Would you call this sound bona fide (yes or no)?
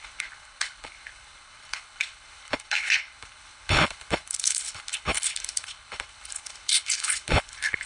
no